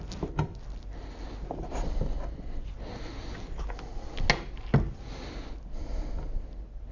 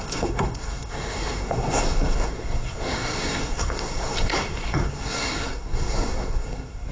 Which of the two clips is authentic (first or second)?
first